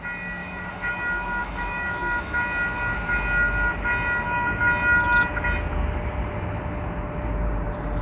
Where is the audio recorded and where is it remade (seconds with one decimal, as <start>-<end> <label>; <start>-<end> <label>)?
0.0-0.4 recorded; 0.4-0.9 remade; 0.9-1.4 recorded; 1.4-2.4 remade; 2.4-8.0 recorded